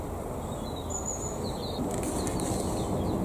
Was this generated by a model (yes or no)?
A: no